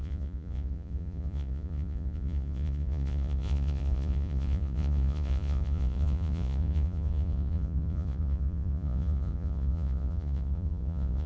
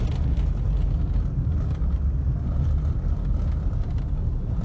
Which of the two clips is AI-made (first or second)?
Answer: first